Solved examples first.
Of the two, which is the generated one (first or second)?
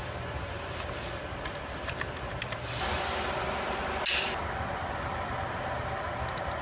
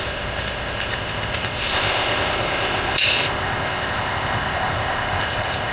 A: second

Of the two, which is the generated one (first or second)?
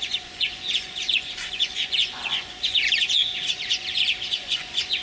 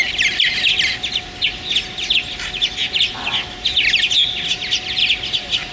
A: first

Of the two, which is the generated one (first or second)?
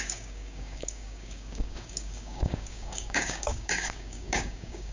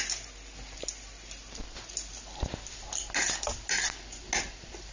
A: first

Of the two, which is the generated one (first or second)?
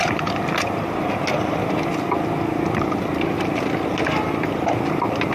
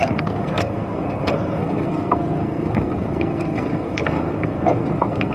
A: second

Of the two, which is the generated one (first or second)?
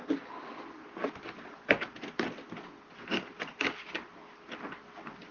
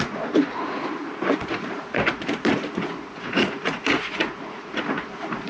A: second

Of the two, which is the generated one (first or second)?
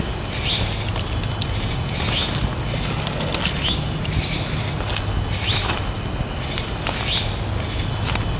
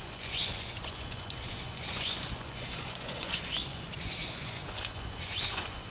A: second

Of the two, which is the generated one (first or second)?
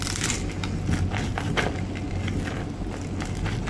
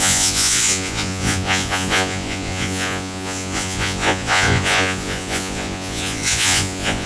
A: second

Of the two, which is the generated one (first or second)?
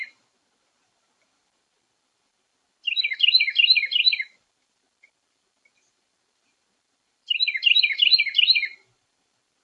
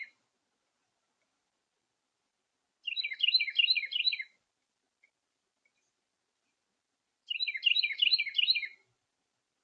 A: first